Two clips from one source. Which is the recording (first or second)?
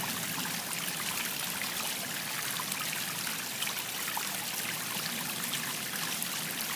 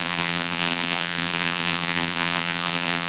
first